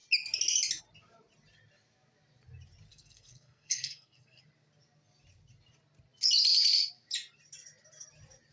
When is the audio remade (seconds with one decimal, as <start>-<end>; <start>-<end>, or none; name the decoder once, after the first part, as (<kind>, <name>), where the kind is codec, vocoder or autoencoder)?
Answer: 2.9-4.4 (codec, SNAC)